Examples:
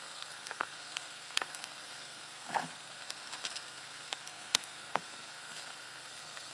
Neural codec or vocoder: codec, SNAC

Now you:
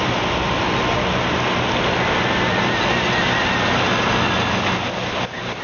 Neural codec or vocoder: none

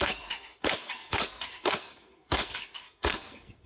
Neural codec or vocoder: codec, SNAC